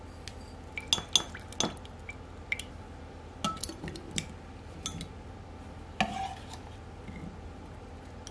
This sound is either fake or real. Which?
real